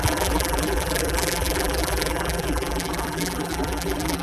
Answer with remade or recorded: remade